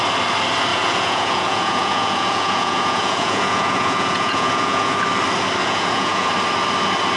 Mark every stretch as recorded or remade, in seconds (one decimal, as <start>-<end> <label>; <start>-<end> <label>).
0.0-0.7 recorded; 0.7-5.0 remade; 5.0-5.6 recorded; 5.6-6.3 remade; 6.3-7.2 recorded